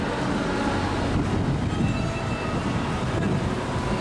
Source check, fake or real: real